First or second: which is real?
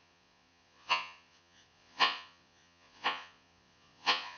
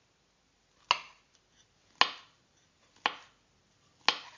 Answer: second